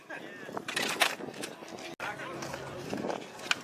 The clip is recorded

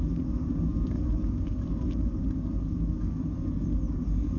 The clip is recorded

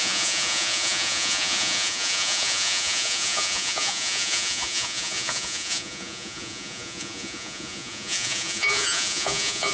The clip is remade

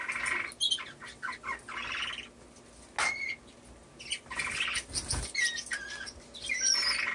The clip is recorded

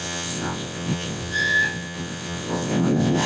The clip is remade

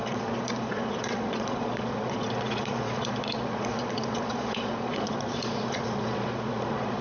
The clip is remade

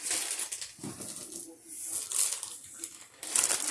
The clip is recorded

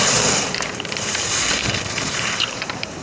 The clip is remade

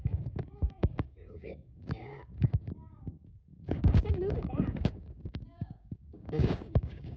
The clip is remade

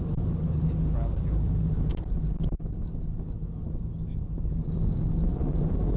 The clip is recorded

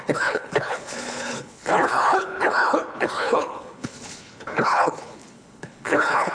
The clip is remade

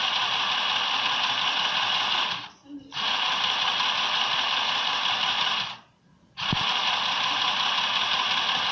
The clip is recorded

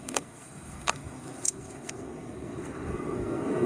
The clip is remade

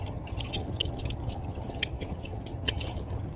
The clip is remade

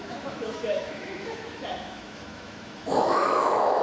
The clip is remade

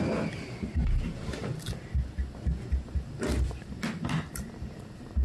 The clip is recorded